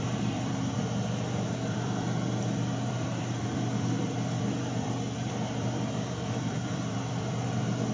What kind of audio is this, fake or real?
fake